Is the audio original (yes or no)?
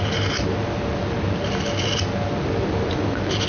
yes